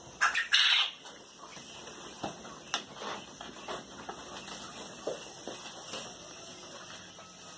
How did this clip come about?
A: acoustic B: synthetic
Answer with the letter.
A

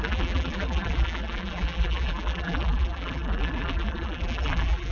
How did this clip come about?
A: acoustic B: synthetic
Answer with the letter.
B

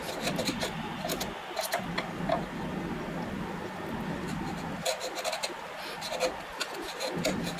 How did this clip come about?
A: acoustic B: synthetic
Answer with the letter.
A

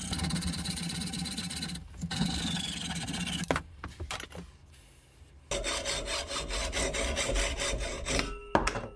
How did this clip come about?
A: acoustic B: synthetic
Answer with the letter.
A